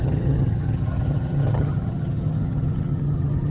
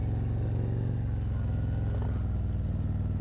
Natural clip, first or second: second